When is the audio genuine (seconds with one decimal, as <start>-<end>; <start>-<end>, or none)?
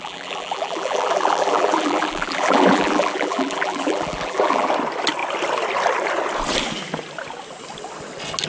4.7-8.5